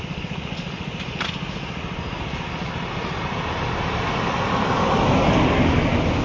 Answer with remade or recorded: recorded